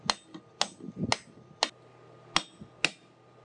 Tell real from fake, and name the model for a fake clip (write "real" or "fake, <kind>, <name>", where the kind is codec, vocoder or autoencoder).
real